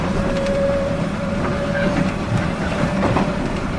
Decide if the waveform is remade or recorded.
remade